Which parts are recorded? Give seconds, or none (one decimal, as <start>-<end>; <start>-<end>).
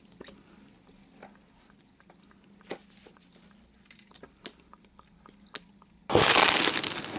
0.0-7.2